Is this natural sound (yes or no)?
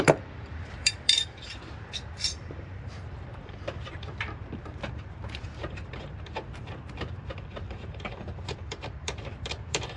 no